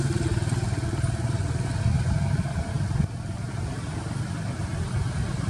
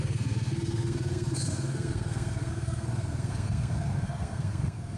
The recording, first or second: first